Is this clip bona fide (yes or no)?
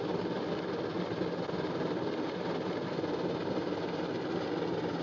yes